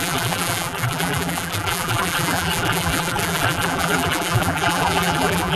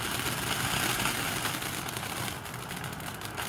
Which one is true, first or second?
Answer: second